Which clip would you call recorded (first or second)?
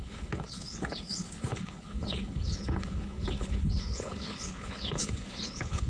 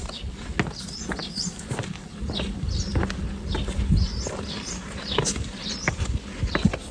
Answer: second